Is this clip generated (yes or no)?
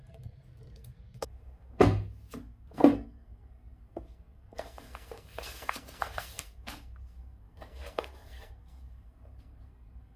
yes